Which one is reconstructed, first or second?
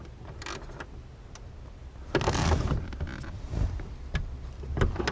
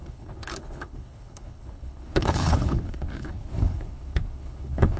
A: second